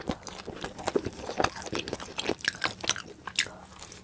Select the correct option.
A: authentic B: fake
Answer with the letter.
A